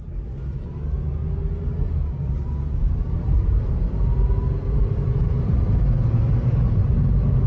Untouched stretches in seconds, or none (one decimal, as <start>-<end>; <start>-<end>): 0.0-2.8; 6.2-7.5

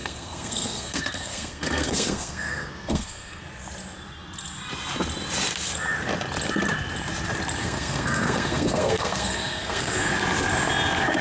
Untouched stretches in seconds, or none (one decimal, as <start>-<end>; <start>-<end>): 3.4-7.6; 10.1-11.2

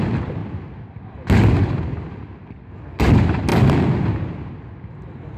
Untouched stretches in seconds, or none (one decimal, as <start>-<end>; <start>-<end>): 0.0-5.4